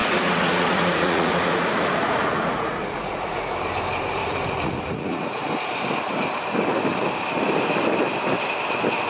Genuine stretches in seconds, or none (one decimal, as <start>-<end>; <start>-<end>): 3.5-4.2; 5.4-9.1